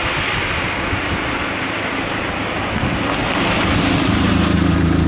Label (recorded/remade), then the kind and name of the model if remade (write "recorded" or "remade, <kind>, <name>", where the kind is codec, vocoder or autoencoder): recorded